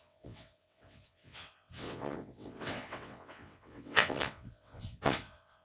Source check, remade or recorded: remade